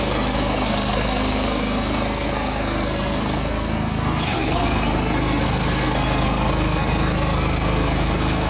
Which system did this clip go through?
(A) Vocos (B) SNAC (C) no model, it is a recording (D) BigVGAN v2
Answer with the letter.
B